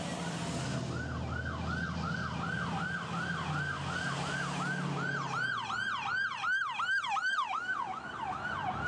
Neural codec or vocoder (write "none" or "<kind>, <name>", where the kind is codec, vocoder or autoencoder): none